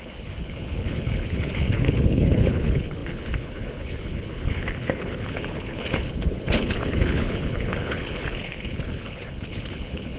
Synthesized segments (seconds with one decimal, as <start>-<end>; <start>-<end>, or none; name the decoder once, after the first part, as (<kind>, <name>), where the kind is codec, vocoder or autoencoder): 0.0-10.2 (codec, HILCodec)